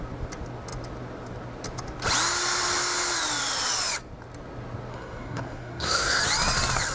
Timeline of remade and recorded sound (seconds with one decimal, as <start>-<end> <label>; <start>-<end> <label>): 0.0-4.9 recorded; 4.9-6.2 remade; 6.2-6.9 recorded